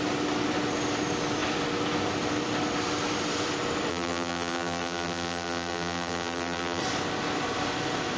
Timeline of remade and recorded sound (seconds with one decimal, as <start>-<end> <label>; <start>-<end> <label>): 0.0-3.9 recorded; 3.9-6.8 remade; 6.8-8.2 recorded